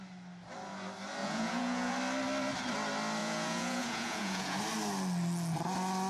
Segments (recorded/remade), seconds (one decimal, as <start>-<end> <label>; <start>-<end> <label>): 0.0-1.2 recorded; 1.2-1.9 remade; 1.9-3.2 recorded; 3.2-4.6 remade; 4.6-6.1 recorded